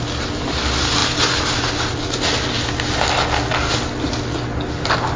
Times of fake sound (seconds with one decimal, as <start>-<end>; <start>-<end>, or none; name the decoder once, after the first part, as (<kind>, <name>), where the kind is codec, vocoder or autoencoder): none